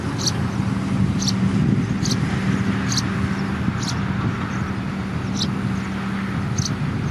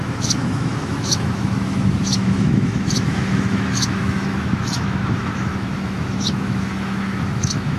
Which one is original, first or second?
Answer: first